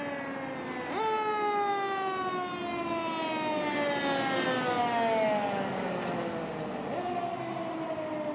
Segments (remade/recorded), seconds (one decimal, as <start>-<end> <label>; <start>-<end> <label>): 0.0-8.3 recorded